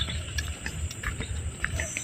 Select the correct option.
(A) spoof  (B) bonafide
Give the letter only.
A